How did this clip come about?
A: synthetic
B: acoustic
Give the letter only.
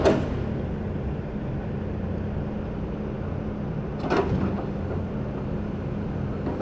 B